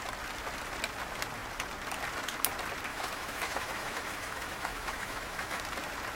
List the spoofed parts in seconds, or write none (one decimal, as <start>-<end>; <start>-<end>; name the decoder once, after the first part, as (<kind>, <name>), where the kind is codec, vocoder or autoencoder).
2.9-5.6 (autoencoder, DAC-VAE)